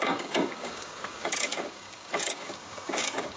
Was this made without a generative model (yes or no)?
no